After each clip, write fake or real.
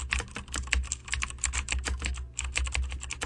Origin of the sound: real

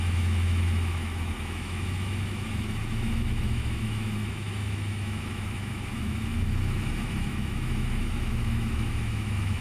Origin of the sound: fake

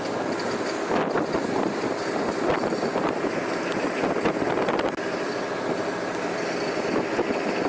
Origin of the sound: real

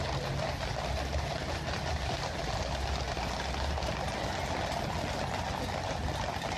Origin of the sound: real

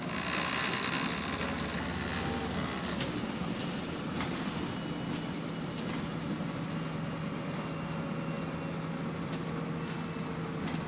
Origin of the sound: real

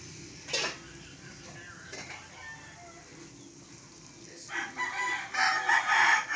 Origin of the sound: real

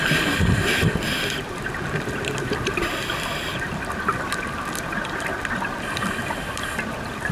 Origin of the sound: fake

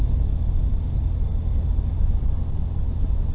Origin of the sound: real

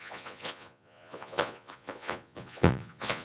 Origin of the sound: fake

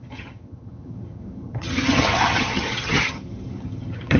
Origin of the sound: fake